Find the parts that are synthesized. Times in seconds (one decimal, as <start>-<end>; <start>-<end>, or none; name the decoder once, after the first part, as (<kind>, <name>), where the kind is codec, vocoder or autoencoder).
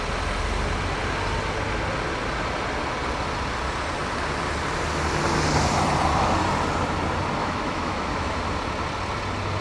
7.4-8.4 (autoencoder, DAC-VAE)